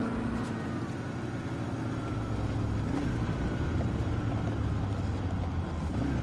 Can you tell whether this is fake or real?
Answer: real